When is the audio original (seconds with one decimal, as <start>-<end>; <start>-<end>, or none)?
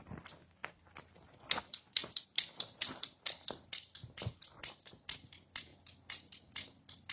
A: 0.0-7.1